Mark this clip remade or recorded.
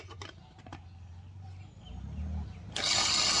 recorded